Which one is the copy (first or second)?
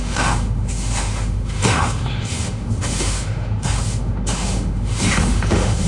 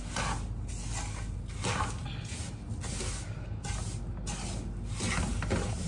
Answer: first